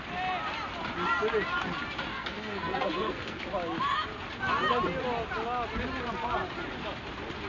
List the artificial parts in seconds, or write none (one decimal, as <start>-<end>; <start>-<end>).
2.1-3.4